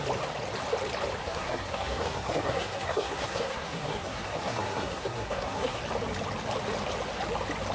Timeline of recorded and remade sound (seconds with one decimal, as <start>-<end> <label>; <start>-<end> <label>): 0.0-1.2 recorded; 1.2-5.8 remade; 5.8-7.7 recorded